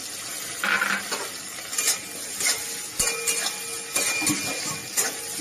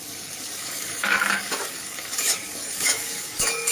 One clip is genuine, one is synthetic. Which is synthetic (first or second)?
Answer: second